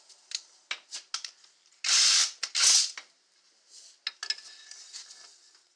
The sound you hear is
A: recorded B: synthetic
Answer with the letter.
A